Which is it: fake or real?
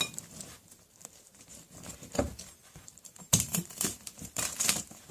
fake